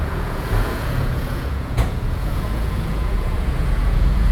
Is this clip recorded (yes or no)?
no